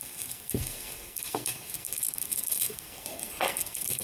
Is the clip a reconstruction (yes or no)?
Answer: yes